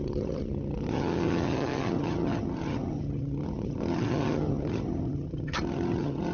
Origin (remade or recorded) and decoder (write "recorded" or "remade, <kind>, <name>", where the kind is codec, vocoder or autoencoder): remade, vocoder, HiFi-GAN